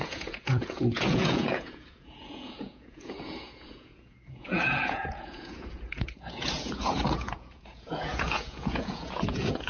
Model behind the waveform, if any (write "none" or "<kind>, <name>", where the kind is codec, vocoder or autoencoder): vocoder, Vocos